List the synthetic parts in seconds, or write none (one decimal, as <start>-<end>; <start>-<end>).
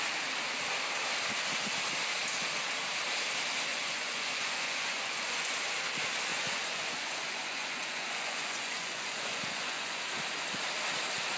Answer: 3.7-5.5; 6.3-10.0